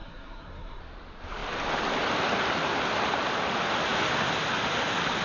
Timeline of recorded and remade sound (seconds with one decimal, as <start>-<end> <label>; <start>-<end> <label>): 0.0-0.8 remade; 0.8-5.2 recorded